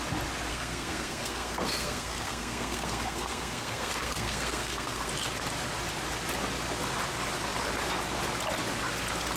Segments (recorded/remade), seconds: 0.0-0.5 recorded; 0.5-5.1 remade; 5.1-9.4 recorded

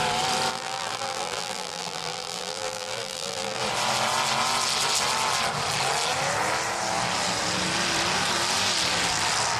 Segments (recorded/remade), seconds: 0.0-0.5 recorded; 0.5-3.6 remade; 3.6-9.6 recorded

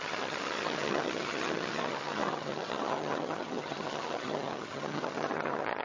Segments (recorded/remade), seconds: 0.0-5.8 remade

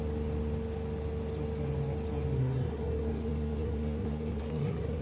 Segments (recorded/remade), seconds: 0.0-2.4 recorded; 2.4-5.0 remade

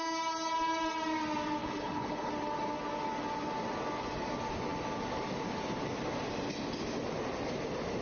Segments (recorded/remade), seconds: 0.0-1.6 recorded; 1.6-2.3 remade; 2.3-8.0 recorded

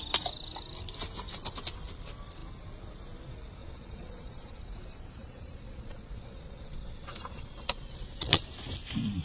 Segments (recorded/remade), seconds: 0.0-3.6 recorded; 3.6-4.6 remade; 4.6-5.2 recorded; 5.2-8.4 remade; 8.4-9.2 recorded